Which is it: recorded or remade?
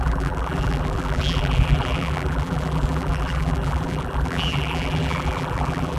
remade